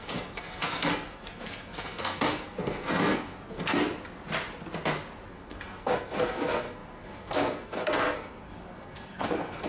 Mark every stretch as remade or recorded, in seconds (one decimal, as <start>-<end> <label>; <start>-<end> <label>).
0.0-3.8 remade; 3.8-5.3 recorded; 5.3-9.7 remade